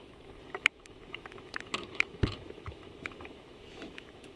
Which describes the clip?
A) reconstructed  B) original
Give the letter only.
A